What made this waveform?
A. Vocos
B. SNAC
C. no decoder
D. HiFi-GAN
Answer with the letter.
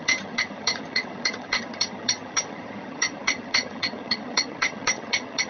D